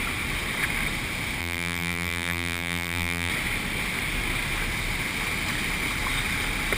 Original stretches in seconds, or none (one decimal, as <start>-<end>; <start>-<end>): 0.0-1.4; 3.3-6.8